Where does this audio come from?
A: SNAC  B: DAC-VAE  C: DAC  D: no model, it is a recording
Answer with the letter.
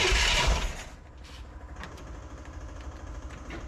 D